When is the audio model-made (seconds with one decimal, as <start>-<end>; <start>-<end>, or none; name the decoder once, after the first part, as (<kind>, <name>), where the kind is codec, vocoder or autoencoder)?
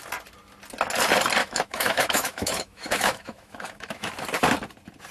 1.4-4.1 (autoencoder, DAC-VAE)